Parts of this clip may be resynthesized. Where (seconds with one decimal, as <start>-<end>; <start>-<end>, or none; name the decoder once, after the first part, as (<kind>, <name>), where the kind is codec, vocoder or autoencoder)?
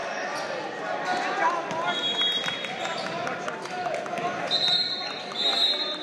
none